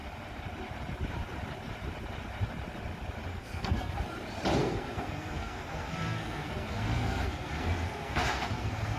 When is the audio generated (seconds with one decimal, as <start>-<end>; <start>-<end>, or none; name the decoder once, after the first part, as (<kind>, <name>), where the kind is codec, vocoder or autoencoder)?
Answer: 3.3-4.0 (codec, SNAC); 4.6-9.0